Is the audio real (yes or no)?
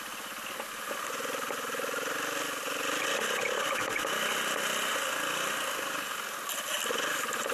yes